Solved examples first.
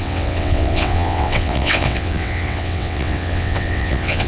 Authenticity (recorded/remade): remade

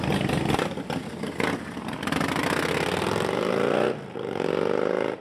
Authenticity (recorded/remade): recorded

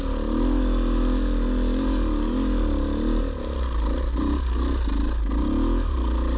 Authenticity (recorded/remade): recorded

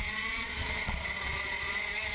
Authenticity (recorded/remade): remade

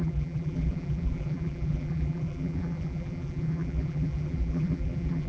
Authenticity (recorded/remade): remade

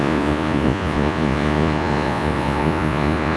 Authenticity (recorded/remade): remade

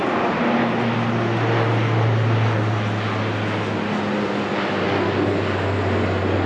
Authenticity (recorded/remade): recorded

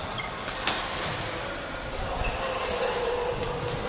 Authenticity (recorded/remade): remade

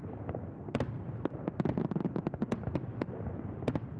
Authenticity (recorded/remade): recorded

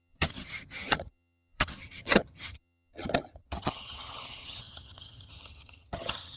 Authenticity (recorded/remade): remade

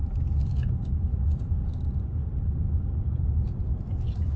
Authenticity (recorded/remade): recorded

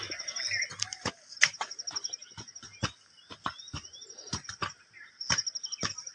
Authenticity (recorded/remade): recorded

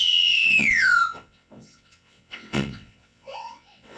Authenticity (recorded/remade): remade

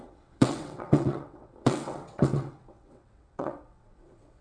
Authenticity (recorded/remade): remade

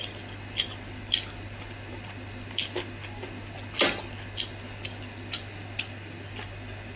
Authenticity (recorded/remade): recorded